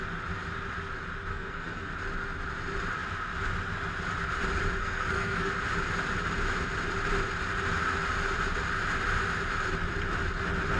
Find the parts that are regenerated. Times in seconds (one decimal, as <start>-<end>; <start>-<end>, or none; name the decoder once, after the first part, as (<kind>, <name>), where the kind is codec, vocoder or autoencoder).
1.3-1.9 (codec, SNAC); 4.8-5.5